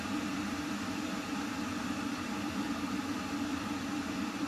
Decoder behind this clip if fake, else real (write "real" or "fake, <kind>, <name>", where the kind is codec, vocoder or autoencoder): fake, vocoder, BigVGAN v2